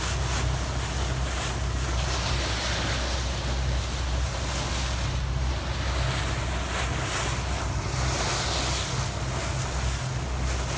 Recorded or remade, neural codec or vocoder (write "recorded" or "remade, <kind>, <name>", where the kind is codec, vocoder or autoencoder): recorded